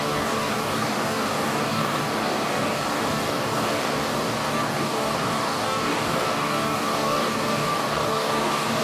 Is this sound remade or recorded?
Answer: remade